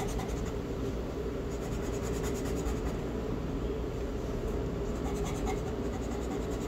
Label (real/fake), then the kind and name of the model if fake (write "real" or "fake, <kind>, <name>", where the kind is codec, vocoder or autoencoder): real